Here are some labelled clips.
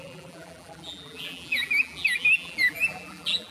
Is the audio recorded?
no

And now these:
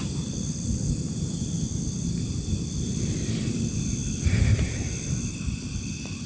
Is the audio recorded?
no